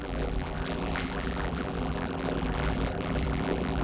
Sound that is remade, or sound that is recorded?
remade